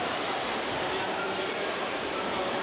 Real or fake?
fake